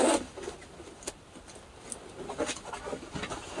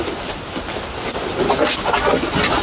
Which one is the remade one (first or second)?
first